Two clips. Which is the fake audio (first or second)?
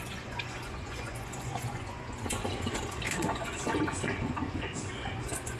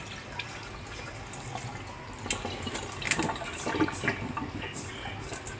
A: first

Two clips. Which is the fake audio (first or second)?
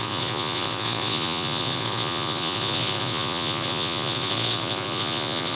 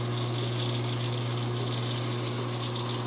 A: first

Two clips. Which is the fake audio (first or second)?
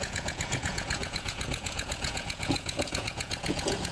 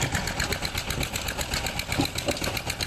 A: first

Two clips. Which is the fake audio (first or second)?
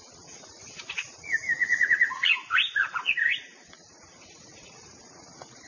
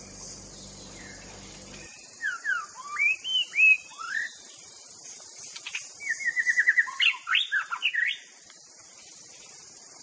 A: first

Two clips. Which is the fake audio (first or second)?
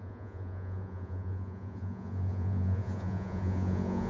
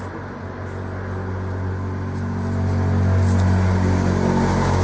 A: first